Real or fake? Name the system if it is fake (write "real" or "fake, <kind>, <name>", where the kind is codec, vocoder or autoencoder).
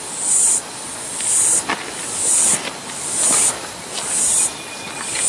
real